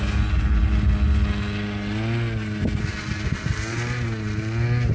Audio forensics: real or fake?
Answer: real